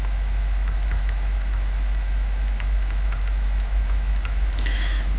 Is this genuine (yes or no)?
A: no